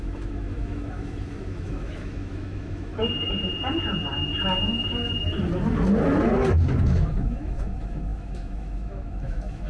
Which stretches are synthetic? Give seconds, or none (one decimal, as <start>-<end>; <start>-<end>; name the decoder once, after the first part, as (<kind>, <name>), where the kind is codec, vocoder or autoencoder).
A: 0.0-2.9 (autoencoder, DAC-VAE); 6.8-9.7